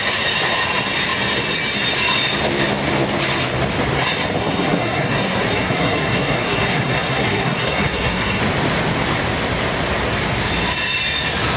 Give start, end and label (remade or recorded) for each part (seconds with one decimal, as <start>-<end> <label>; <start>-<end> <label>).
0.0-4.4 recorded; 4.4-8.4 remade; 8.4-11.6 recorded